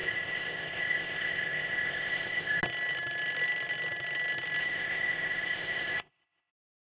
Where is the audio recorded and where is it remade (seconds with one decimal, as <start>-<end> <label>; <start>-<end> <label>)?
0.0-2.6 remade; 2.6-4.6 recorded; 4.6-6.5 remade; 6.5-6.9 recorded